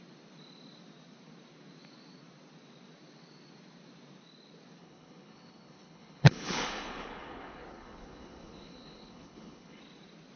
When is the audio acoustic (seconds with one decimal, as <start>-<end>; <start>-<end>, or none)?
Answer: 0.0-4.8; 9.8-10.4